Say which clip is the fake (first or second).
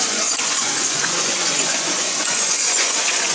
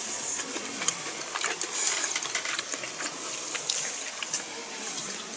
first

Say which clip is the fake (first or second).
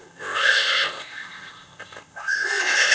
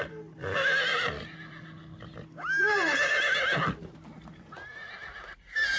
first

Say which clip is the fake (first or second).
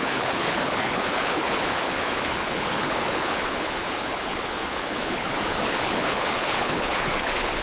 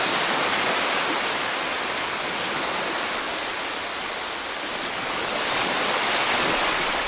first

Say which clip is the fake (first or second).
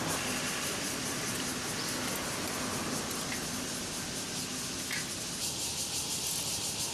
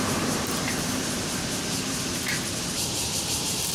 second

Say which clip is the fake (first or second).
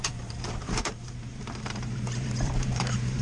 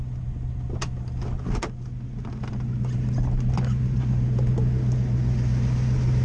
first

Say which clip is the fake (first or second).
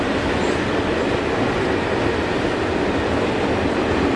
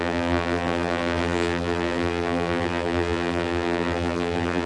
second